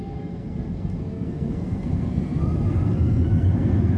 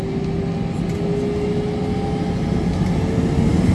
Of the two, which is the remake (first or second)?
first